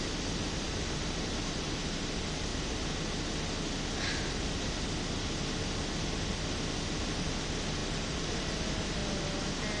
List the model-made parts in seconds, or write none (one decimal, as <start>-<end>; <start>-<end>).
0.0-2.5; 7.2-9.0